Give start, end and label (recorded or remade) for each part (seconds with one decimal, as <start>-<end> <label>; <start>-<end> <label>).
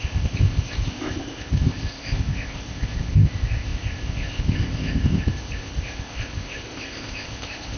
0.0-7.8 remade